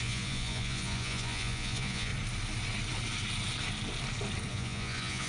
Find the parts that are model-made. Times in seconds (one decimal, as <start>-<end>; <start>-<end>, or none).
0.0-2.1; 4.5-5.3